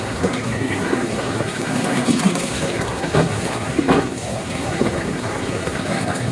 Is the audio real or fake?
fake